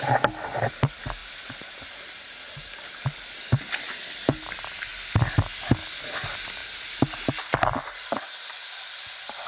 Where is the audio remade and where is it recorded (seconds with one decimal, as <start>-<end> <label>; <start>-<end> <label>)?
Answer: 0.0-9.5 recorded